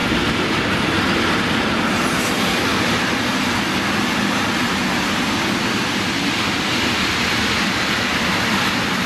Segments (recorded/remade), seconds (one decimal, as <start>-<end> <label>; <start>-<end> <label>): 0.0-8.1 recorded; 8.1-9.1 remade